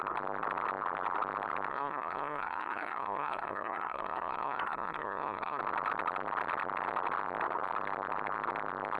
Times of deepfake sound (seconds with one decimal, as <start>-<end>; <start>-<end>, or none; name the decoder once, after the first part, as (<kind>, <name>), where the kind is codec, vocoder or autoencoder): 1.7-5.6 (codec, SNAC)

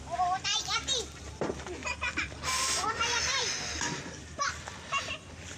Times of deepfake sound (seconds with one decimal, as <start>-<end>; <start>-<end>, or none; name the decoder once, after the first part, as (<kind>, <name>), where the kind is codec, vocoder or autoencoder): none

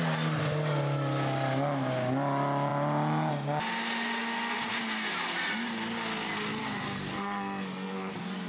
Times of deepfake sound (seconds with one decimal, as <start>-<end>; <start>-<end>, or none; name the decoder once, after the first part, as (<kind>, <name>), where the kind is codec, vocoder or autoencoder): 6.6-8.1 (codec, SNAC)